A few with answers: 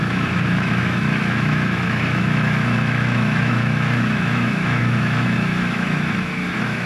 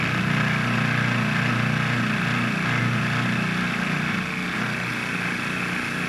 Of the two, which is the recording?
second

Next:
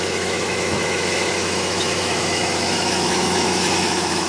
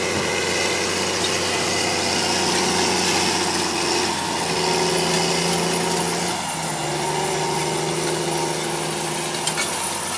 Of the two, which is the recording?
second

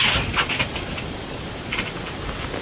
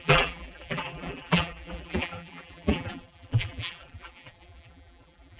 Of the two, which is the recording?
first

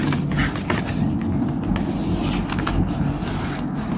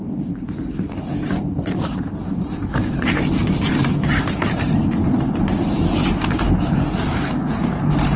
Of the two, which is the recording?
first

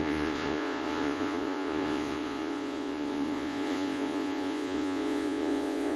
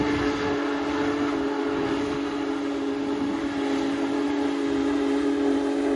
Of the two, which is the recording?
second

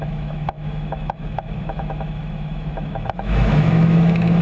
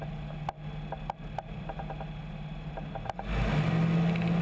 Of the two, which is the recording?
second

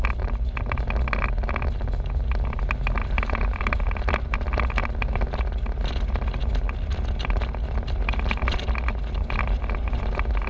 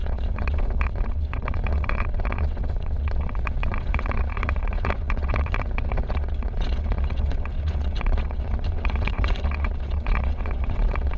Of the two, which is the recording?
first